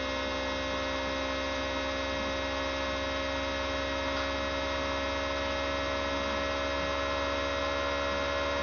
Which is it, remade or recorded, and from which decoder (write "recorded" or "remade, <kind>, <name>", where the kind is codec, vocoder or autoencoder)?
recorded